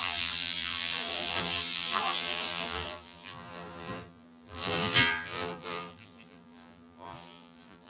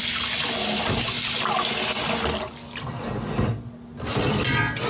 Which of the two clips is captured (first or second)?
second